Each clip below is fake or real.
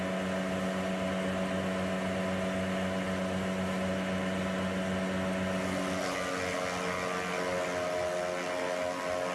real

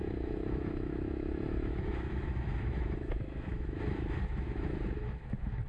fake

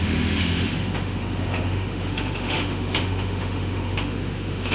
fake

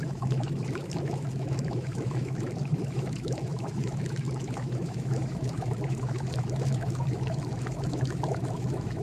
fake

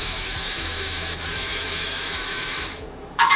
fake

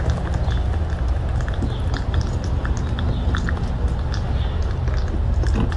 real